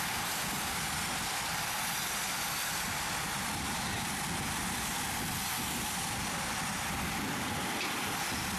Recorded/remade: recorded